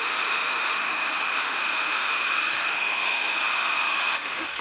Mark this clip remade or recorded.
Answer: remade